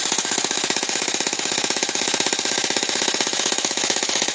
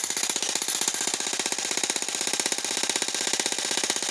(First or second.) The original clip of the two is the second